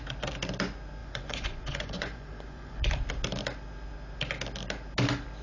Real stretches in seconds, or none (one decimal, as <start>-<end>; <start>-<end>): 0.0-1.0; 2.9-5.4